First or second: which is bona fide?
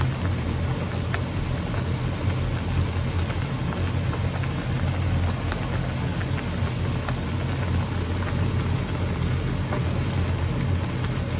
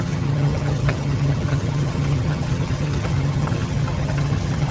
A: first